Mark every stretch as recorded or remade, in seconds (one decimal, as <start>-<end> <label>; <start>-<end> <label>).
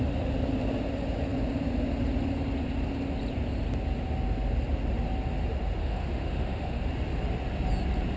0.0-5.8 recorded; 5.8-6.8 remade; 6.8-8.2 recorded